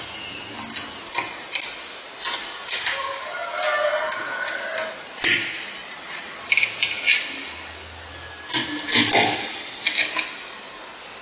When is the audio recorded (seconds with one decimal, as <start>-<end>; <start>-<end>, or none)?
0.0-5.8; 6.5-11.2